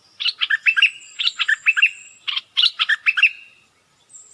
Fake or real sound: real